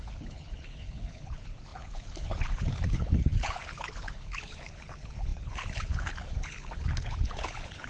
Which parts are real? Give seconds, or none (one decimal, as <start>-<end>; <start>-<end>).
none